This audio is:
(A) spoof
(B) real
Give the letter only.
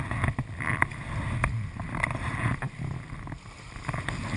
B